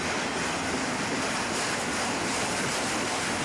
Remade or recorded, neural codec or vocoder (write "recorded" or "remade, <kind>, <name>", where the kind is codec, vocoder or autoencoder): recorded